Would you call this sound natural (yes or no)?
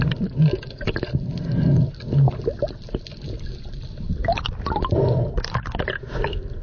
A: yes